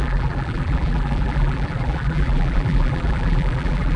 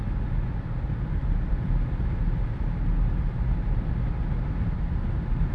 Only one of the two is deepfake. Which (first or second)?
first